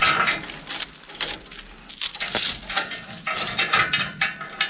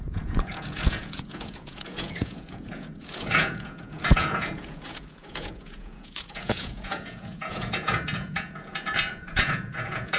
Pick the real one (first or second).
first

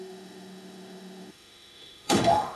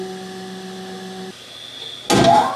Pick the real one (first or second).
second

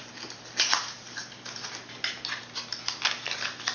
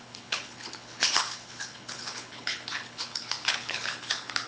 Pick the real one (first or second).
first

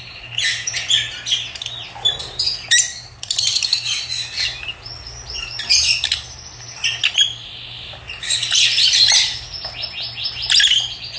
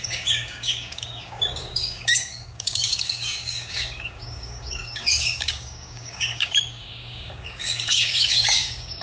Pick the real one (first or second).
first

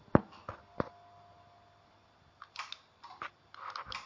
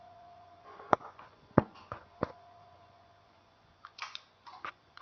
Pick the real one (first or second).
first